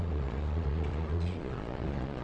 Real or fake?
fake